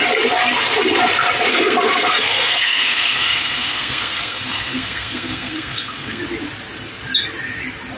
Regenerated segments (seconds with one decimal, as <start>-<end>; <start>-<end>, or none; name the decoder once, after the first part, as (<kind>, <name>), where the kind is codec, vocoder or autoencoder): 1.5-6.2 (codec, SNAC)